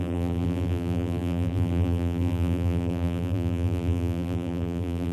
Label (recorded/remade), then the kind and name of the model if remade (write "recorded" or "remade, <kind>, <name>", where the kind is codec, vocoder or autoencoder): remade, vocoder, BigVGAN v2